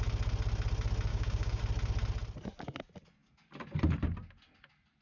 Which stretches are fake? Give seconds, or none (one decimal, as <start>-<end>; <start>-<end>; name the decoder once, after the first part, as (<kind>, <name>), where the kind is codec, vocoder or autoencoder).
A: 1.1-1.6 (codec, DAC)